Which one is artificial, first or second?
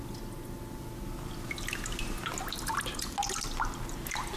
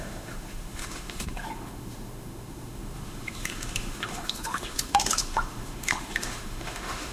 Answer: second